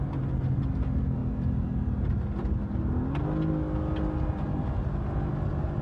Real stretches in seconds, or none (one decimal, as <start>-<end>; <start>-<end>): 0.0-5.8

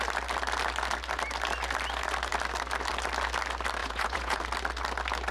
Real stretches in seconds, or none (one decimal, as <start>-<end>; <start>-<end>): 0.0-3.8; 4.4-5.3

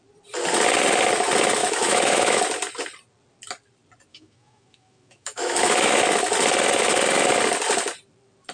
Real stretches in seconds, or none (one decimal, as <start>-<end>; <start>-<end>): 0.0-1.6; 2.4-4.1; 6.0-8.5

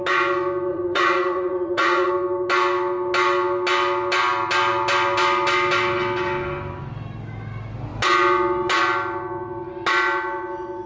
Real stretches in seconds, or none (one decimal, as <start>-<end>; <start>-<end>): 0.0-0.7; 2.1-10.9

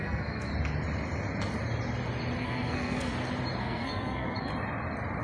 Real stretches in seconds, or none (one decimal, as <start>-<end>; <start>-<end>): 0.5-2.4; 3.1-3.6; 4.5-5.2